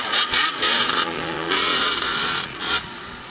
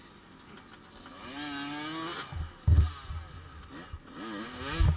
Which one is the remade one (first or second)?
first